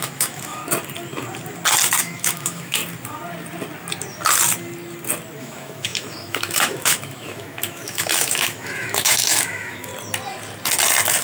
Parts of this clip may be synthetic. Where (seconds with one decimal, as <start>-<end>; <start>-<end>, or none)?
0.0-0.6; 2.0-2.8; 5.4-9.9